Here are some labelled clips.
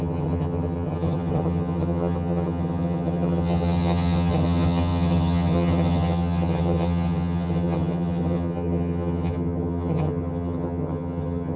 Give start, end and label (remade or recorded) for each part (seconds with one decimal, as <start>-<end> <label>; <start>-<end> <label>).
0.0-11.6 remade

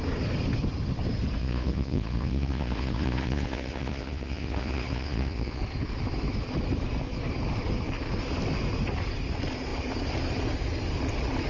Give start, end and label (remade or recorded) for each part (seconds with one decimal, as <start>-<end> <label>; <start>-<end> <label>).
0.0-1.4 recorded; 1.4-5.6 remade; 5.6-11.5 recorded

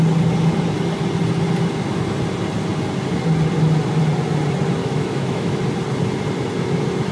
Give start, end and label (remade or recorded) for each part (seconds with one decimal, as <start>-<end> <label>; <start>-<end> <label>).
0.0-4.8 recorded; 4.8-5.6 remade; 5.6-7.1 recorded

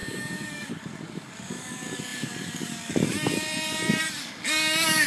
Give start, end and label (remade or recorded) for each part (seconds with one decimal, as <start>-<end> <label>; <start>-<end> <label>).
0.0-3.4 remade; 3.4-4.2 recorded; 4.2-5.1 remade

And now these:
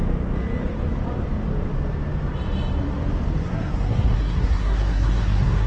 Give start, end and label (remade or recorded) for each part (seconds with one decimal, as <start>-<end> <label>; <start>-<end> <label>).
0.0-3.4 recorded; 3.4-5.7 remade

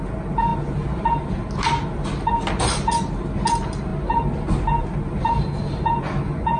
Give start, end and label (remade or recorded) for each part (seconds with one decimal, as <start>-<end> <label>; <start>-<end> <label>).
0.0-6.6 recorded